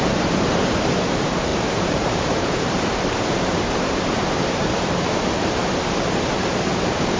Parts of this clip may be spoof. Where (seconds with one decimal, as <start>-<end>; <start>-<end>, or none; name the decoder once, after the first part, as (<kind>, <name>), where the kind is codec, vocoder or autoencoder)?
0.0-5.6 (vocoder, BigVGAN v2); 6.3-7.2